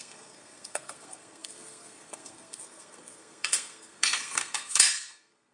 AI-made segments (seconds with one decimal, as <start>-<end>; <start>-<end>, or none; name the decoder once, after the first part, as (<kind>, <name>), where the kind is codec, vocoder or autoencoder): 0.0-5.5 (codec, SNAC)